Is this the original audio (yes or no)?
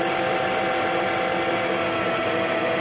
yes